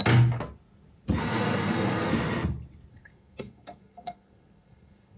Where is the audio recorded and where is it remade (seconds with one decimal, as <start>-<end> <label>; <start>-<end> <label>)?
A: 0.0-1.2 recorded; 1.2-2.1 remade; 2.1-2.9 recorded; 2.9-5.2 remade